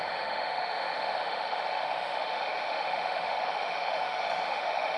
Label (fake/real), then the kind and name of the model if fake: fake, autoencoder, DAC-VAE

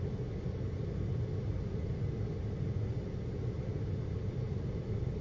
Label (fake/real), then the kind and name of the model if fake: real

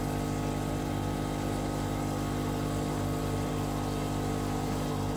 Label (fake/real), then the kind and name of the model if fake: real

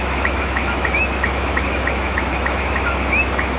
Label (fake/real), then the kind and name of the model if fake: fake, autoencoder, DAC-VAE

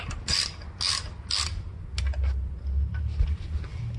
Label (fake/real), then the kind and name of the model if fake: real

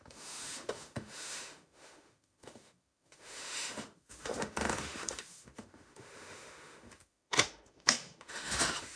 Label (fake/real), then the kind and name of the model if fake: fake, autoencoder, DAC-VAE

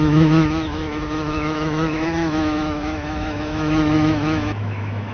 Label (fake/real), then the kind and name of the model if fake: fake, autoencoder, DAC-VAE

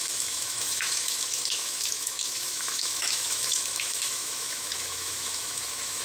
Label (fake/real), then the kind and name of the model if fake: fake, autoencoder, DAC-VAE